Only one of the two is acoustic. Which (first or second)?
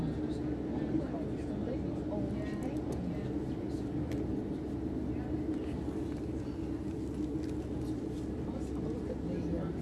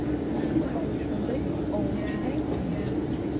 first